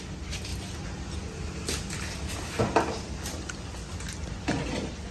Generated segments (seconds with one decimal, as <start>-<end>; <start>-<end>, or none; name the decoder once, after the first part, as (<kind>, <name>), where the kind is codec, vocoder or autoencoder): none